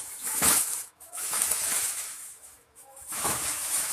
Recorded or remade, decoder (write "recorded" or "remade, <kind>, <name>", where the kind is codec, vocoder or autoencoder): remade, autoencoder, DAC-VAE